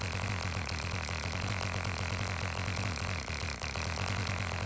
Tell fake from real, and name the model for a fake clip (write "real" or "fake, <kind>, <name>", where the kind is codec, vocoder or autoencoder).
real